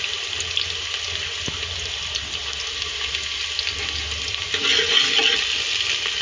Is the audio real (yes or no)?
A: yes